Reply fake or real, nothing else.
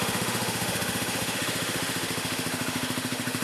fake